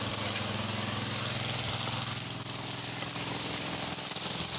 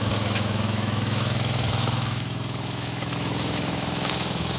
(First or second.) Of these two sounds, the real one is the first